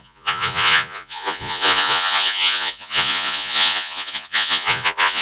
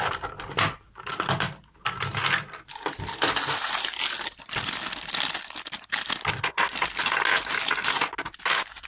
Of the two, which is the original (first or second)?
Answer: second